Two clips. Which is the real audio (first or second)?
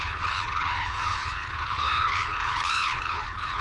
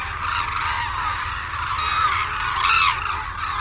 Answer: second